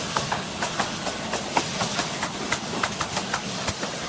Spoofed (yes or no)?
no